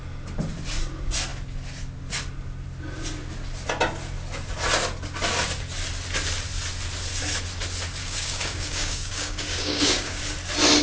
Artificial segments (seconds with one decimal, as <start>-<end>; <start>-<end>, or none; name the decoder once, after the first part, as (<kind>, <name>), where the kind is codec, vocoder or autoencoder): 8.0-10.2 (codec, DAC)